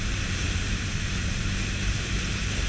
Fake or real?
fake